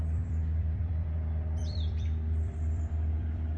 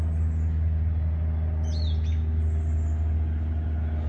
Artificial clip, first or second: first